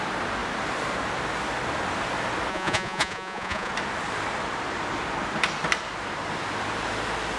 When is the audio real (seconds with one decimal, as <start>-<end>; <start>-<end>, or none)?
0.0-2.5; 3.7-7.4